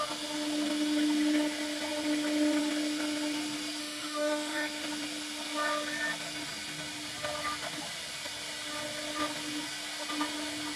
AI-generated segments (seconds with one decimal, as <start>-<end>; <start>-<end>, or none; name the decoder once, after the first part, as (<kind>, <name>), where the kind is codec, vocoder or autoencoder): 3.8-4.9 (autoencoder, DAC-VAE)

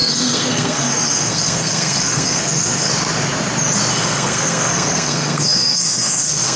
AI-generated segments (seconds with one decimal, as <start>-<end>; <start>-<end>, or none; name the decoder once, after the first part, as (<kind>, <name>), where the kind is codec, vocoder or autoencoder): 0.0-2.9 (codec, SNAC); 3.9-6.6

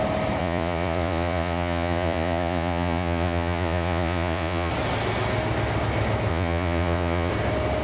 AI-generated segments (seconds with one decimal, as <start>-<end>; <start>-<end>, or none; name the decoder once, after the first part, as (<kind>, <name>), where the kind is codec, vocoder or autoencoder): 0.4-4.7 (vocoder, Vocos); 6.3-7.3

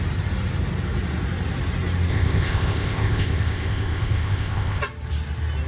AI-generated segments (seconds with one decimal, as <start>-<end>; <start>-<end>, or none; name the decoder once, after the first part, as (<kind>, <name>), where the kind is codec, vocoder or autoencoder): 2.1-4.8 (codec, ZipCodec)

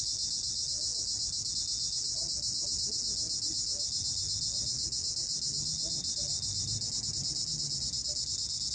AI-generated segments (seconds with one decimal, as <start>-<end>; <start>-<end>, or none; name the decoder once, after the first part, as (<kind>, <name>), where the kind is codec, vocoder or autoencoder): none

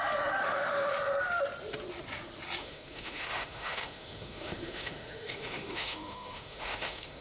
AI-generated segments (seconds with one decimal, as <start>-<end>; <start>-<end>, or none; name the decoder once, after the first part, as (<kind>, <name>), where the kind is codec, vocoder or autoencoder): 0.4-0.9 (autoencoder, DAC-VAE); 2.6-7.2

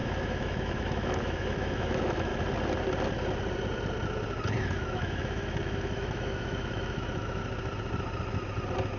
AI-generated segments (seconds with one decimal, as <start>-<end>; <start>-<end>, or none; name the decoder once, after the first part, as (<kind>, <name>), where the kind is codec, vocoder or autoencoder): 0.0-2.3 (autoencoder, DAC-VAE); 4.6-7.4

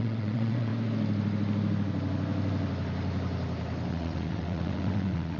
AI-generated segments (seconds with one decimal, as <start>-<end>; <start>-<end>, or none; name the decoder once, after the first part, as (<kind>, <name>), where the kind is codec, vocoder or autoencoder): 0.0-0.7 (vocoder, WaveNeXt); 3.9-5.4